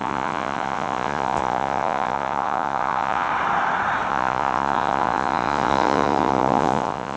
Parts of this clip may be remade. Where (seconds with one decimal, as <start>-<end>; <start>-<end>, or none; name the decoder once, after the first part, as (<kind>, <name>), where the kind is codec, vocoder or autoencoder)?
0.0-3.3 (vocoder, Vocos); 4.1-7.2